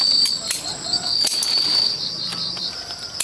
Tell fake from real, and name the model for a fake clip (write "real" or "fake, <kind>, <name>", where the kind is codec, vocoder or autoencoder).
fake, vocoder, BigVGAN v2